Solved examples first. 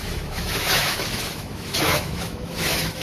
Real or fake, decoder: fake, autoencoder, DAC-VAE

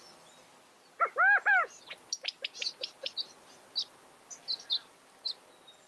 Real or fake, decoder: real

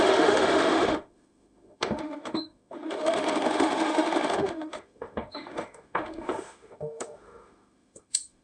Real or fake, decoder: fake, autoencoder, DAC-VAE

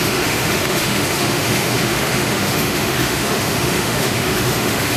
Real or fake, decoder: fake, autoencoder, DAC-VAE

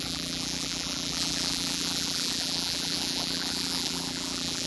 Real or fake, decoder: fake, vocoder, BigVGAN v2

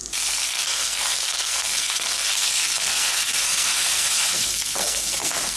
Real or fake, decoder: fake, codec, SNAC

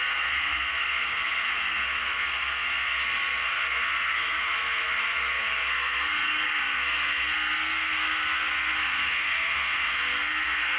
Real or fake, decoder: fake, codec, SNAC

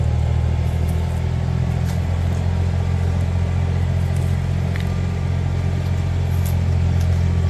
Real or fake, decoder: real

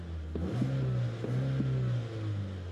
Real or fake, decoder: real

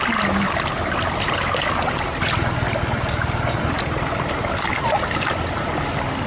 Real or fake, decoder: real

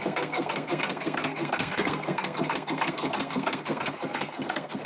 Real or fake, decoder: fake, codec, SNAC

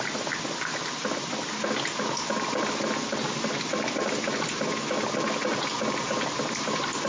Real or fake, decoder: real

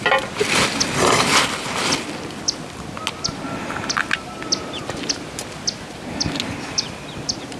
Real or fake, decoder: real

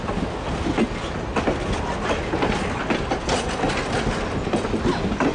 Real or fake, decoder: real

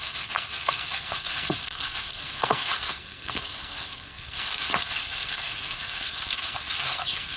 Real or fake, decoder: fake, codec, SNAC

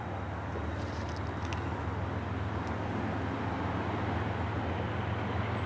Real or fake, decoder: real